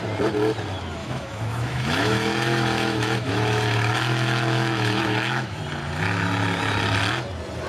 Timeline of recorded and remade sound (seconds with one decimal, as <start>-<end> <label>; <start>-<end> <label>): 0.0-1.0 recorded; 1.0-5.6 remade; 5.6-7.7 recorded